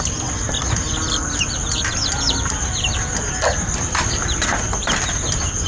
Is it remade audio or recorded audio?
remade